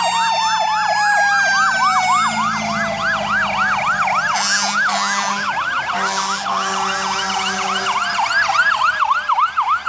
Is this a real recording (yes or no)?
yes